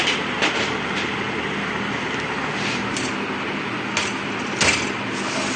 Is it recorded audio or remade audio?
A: recorded